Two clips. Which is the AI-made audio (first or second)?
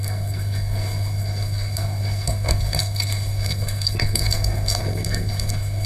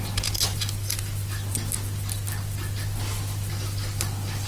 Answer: first